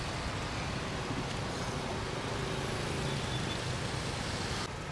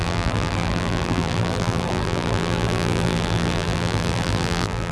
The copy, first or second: second